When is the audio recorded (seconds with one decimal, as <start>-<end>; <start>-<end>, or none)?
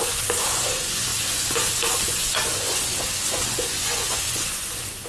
none